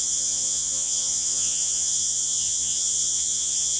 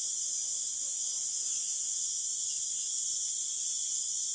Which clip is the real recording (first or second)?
second